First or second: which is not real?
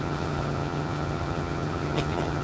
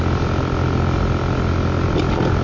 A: first